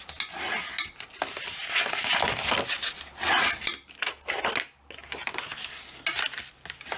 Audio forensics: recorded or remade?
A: recorded